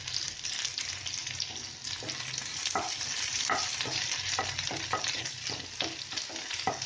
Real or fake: real